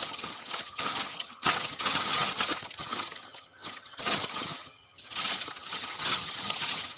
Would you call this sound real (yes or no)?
no